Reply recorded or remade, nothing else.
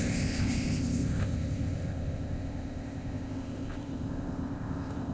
remade